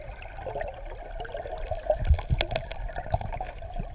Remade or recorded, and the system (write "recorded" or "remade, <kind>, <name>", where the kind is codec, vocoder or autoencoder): recorded